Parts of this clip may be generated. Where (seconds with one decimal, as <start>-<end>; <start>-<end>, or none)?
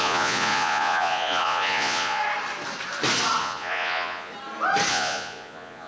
0.0-2.2; 3.4-4.3; 4.9-5.9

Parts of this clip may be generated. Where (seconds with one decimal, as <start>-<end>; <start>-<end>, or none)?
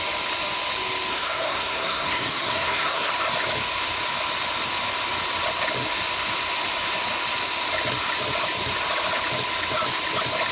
1.1-3.1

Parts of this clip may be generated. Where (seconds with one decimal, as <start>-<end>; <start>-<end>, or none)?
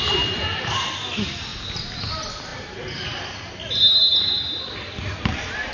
none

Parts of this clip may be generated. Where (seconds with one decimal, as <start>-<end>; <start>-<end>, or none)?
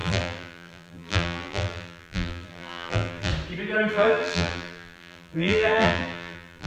0.0-3.3; 3.9-6.7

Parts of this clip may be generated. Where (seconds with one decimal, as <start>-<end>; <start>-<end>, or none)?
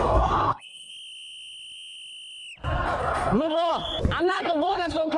0.0-0.9; 3.0-3.7; 4.2-5.2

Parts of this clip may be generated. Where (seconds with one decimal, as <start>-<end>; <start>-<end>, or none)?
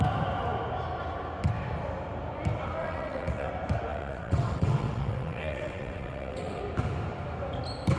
2.8-3.5; 3.9-6.6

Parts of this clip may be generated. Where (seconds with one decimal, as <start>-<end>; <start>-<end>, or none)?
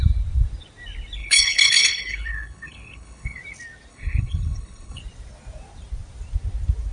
1.2-3.4; 3.9-5.0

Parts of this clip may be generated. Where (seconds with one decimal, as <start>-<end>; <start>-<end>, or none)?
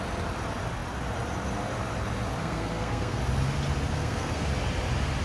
2.4-3.2; 3.9-4.5